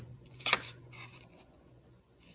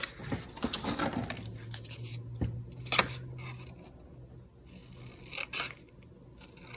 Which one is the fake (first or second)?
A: first